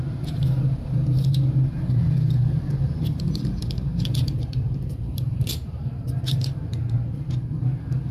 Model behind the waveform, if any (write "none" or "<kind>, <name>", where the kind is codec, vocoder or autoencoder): vocoder, BigVGAN v2